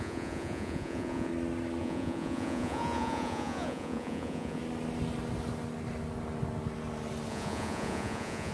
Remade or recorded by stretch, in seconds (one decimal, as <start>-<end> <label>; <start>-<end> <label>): 0.0-1.3 remade; 1.3-1.8 recorded; 1.8-4.6 remade; 4.6-7.3 recorded; 7.3-8.5 remade